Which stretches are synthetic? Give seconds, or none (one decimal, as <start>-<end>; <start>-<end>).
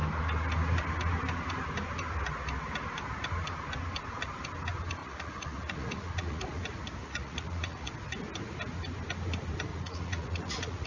5.0-6.6; 7.0-7.9; 9.7-10.9